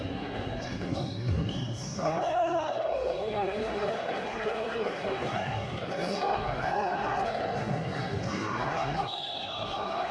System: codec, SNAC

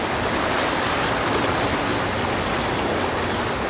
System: none